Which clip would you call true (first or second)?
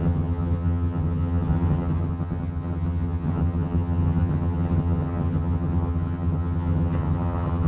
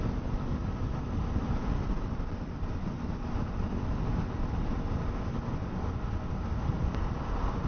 second